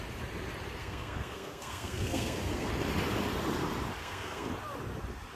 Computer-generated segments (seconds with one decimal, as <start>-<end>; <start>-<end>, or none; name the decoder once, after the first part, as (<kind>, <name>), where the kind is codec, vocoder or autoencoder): 0.8-2.7 (codec, SNAC); 4.0-4.5